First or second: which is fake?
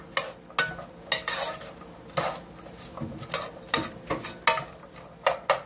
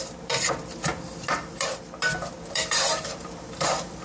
second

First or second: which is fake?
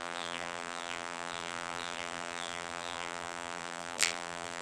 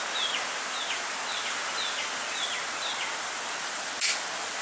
first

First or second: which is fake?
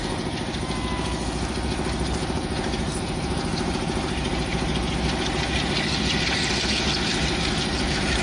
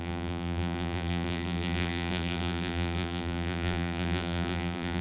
second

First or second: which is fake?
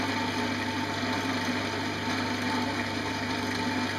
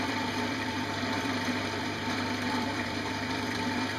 second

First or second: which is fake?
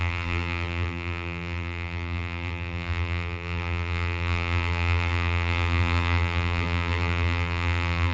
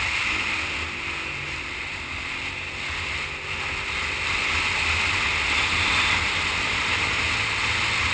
first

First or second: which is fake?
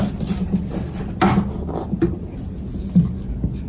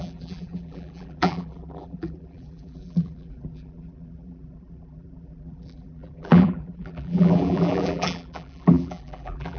second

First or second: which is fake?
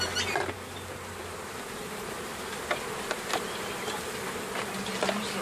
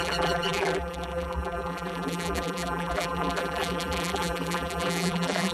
second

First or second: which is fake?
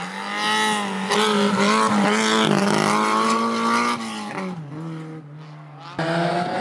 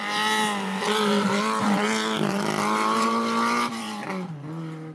second